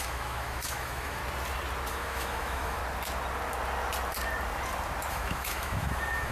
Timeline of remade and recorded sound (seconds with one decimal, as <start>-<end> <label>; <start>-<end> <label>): 0.0-1.2 remade; 1.2-1.9 recorded; 1.9-2.8 remade; 2.8-5.1 recorded; 5.1-6.3 remade